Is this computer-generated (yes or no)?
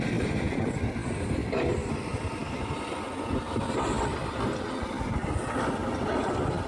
no